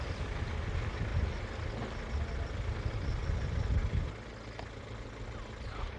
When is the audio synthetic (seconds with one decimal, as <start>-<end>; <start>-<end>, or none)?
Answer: none